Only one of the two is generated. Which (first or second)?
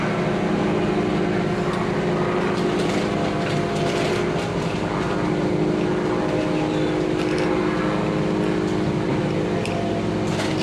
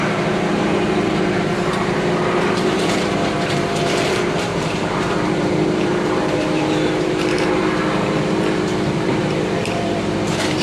second